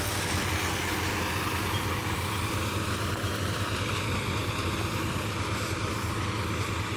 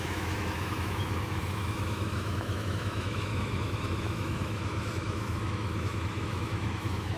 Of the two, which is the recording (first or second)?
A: first